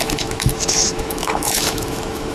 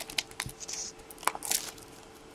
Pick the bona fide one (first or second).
second